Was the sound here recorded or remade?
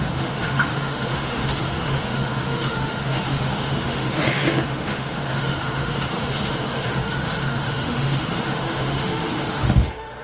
remade